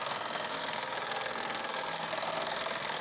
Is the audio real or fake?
fake